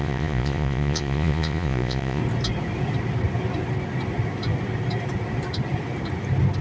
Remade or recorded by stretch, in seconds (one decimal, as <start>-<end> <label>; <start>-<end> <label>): 0.0-2.2 remade; 2.2-6.6 recorded